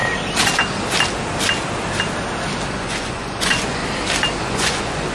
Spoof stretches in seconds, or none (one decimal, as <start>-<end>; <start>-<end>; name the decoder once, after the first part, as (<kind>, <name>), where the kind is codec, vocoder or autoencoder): 2.7-3.8 (vocoder, Vocos); 4.4-5.1